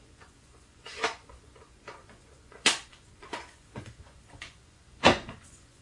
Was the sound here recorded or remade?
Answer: remade